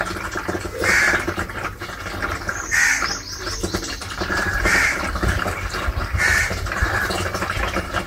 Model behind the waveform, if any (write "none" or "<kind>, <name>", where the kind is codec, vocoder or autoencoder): vocoder, BigVGAN v2